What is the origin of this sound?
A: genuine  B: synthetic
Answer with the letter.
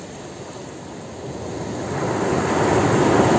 A